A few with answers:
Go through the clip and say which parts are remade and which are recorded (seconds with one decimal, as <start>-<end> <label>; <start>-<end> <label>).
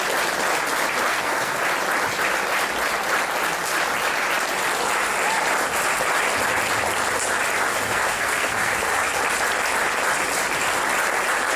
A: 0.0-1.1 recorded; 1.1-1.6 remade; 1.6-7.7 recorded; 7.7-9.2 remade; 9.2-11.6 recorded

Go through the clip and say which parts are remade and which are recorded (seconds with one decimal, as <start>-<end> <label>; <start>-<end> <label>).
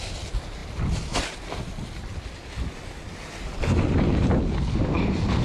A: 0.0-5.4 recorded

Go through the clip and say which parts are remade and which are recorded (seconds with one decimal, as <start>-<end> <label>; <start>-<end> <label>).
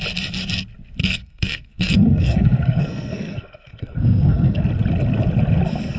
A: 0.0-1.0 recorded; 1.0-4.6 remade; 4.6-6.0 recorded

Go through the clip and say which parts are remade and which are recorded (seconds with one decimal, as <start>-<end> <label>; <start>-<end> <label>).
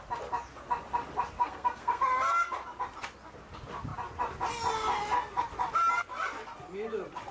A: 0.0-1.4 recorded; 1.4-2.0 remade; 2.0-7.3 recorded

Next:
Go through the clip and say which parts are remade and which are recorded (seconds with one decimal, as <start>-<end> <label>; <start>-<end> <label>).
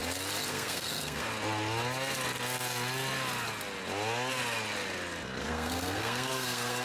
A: 0.0-0.5 recorded; 0.5-1.3 remade; 1.3-5.4 recorded; 5.4-6.8 remade